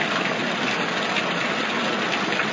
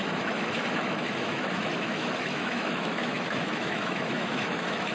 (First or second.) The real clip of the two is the first